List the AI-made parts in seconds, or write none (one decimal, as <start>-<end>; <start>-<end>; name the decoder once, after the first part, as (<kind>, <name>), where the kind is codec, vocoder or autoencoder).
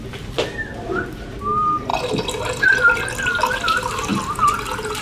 none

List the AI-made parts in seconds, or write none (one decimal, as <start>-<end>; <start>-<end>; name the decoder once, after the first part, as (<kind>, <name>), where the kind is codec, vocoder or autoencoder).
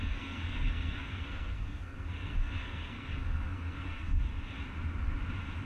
0.0-4.3 (codec, SNAC)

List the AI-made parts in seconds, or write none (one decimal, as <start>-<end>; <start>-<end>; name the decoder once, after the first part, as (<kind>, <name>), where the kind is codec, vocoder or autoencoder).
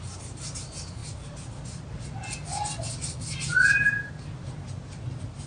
3.5-4.1 (vocoder, BigVGAN v2)